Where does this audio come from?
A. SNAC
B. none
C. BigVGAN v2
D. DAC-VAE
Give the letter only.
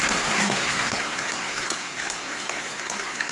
A